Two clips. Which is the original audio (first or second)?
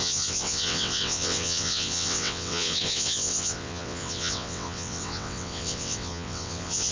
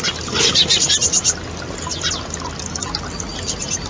second